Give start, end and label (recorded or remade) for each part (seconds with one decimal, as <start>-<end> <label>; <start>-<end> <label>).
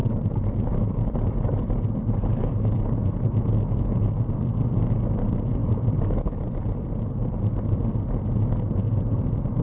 0.0-9.6 recorded